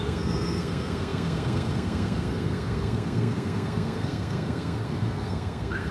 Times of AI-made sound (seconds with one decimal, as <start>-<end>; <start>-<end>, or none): 0.0-5.9